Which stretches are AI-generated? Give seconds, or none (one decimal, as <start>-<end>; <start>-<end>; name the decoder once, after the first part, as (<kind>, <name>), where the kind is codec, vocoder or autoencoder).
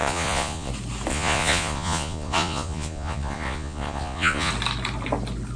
0.0-0.7 (vocoder, Vocos); 1.1-4.5